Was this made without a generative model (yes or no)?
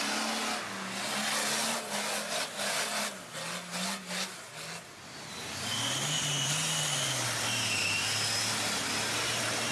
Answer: yes